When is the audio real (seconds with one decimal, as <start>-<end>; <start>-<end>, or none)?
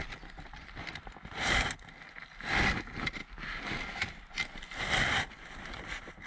0.0-6.3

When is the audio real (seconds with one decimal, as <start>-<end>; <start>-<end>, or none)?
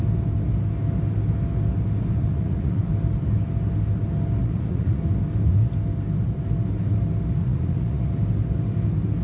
0.0-2.2; 2.8-4.4; 5.0-7.4; 8.1-9.2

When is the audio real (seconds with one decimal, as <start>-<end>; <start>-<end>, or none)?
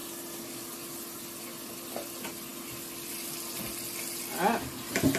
0.0-5.2